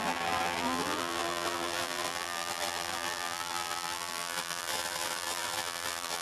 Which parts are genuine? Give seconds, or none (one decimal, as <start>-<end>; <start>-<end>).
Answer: none